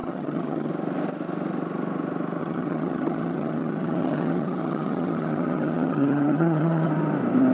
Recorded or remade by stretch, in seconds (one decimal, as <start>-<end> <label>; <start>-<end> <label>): 0.0-0.7 remade; 0.7-2.4 recorded; 2.4-6.9 remade; 6.9-7.5 recorded